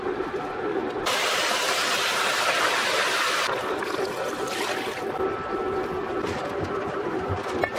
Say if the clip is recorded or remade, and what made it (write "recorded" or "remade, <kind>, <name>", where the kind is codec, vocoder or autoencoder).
remade, vocoder, BigVGAN v2